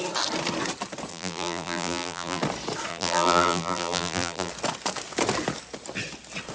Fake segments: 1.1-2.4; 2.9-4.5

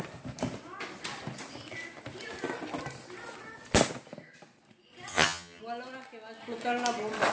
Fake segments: 5.1-5.6

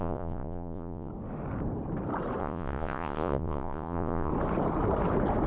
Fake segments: 0.0-1.1; 2.4-4.3